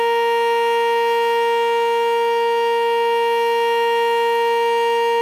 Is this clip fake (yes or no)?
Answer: no